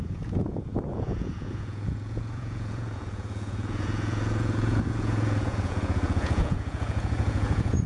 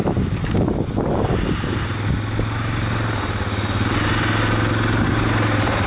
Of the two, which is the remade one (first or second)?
first